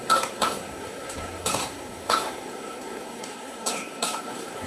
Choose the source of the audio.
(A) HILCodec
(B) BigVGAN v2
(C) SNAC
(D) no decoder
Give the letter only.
C